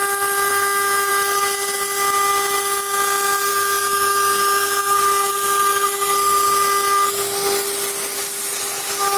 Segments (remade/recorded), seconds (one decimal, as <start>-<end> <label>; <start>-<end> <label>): 0.0-0.5 recorded; 0.5-1.1 remade; 1.1-3.5 recorded; 3.5-5.3 remade; 5.3-9.2 recorded